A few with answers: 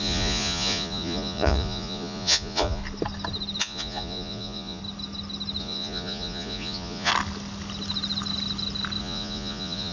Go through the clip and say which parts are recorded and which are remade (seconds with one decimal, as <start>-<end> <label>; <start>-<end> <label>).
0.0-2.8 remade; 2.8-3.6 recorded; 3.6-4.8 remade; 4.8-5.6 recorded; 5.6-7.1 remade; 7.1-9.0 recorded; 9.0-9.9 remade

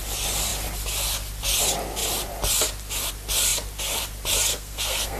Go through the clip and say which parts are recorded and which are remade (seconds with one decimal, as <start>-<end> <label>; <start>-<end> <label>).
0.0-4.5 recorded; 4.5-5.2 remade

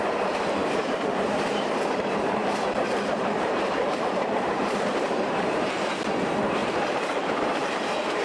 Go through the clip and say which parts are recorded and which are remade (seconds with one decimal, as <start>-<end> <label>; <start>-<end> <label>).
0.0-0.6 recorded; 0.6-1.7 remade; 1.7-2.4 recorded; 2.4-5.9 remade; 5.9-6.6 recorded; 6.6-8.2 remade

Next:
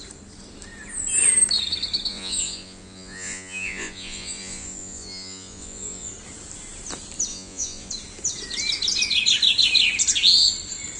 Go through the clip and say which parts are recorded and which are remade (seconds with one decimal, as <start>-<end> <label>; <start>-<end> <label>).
0.0-2.1 recorded; 2.1-6.1 remade; 6.1-7.3 recorded; 7.3-7.9 remade; 7.9-11.0 recorded

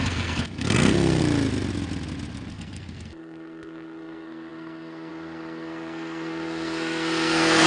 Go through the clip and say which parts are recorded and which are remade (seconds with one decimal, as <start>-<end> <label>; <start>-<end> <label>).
0.0-1.2 remade; 1.2-2.5 recorded; 2.5-7.7 remade

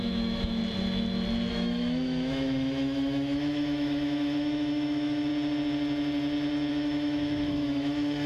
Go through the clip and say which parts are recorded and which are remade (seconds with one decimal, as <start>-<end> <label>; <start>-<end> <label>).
0.0-0.6 remade; 0.6-1.5 recorded; 1.5-5.3 remade; 5.3-6.7 recorded; 6.7-8.3 remade